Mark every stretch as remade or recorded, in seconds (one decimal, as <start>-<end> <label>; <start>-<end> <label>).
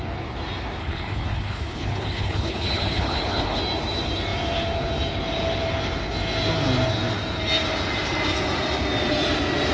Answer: 0.0-0.8 recorded; 0.8-3.6 remade; 3.6-9.7 recorded